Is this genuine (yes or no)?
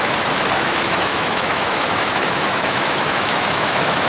no